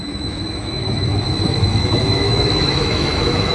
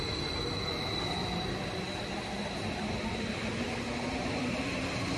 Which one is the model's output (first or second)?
first